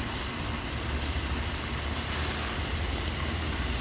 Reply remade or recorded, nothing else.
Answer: recorded